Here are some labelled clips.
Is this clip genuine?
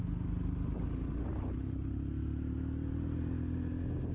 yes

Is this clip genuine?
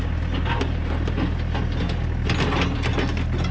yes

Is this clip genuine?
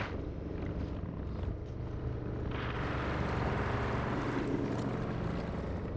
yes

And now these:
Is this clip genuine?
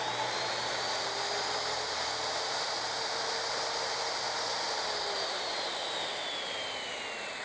yes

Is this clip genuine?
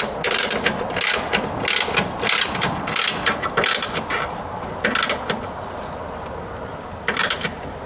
yes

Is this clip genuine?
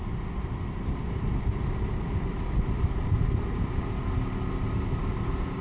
yes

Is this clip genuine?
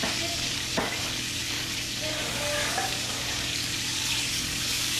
no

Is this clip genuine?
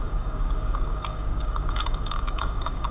no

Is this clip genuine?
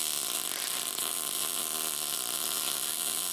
yes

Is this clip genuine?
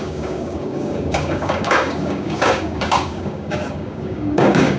no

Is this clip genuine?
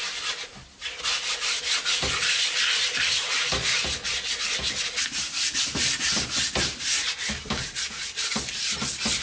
yes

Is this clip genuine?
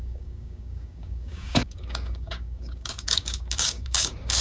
no